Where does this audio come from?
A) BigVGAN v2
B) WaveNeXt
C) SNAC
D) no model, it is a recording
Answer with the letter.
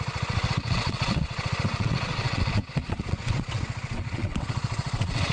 B